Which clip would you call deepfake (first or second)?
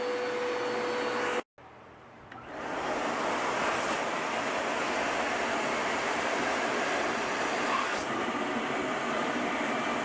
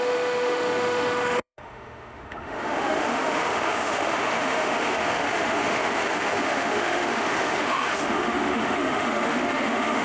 second